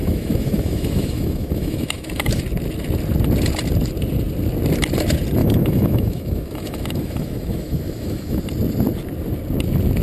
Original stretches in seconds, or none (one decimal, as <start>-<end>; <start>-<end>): 2.4-5.4; 8.4-10.0